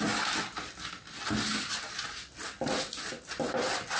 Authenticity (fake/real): real